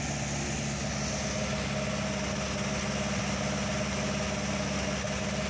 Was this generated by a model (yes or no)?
no